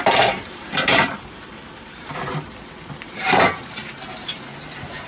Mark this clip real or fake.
fake